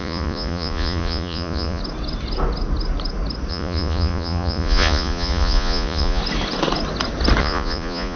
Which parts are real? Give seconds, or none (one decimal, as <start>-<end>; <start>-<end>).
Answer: 1.8-3.5; 6.2-7.4